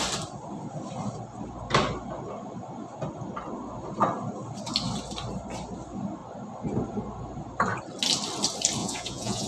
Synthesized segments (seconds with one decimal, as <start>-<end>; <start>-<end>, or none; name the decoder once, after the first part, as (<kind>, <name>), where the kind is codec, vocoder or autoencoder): 8.8-9.5 (vocoder, Vocos)